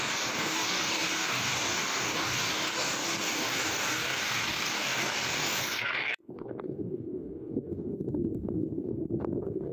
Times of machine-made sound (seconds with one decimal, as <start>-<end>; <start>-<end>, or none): 0.0-9.7